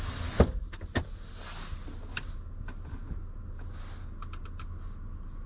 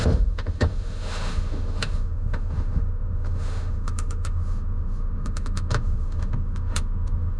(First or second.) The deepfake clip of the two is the second